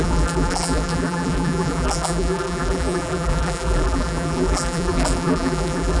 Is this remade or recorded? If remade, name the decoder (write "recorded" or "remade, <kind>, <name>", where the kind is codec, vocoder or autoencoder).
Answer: remade, vocoder, BigVGAN v2